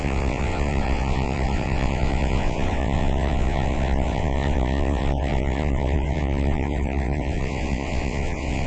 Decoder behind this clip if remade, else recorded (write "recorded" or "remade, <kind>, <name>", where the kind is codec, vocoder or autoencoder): remade, vocoder, WaveNeXt